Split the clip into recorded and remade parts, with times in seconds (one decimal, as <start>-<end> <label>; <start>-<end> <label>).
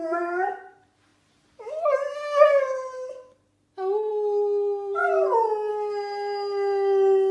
0.0-7.3 recorded